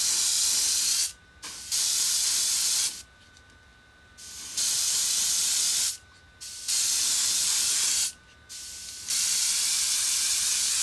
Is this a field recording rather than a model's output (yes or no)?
yes